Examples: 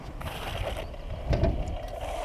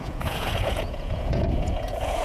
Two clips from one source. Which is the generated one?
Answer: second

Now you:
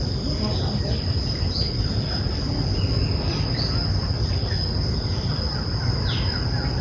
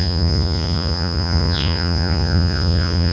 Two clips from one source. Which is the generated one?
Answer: second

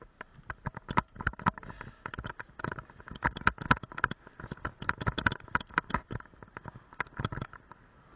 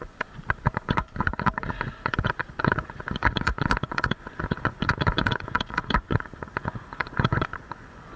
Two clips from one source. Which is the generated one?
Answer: second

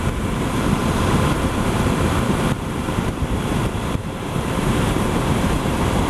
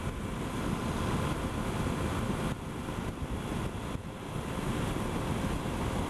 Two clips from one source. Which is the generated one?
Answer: first